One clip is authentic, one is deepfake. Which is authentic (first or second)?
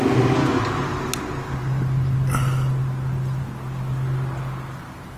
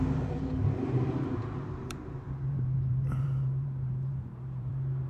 first